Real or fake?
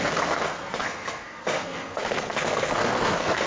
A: fake